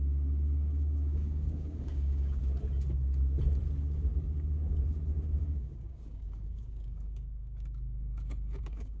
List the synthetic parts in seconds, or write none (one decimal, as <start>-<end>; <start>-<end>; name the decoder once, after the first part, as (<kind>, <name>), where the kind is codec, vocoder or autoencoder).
0.0-2.4 (codec, DAC); 5.4-9.0